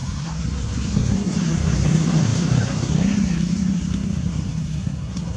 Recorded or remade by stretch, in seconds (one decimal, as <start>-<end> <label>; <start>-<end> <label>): 0.0-5.4 remade